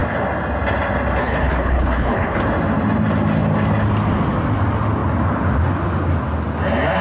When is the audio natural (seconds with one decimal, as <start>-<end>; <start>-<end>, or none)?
0.0-1.2; 2.4-7.0